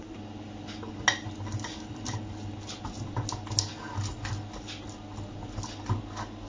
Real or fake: real